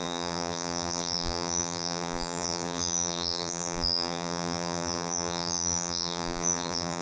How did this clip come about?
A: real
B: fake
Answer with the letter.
B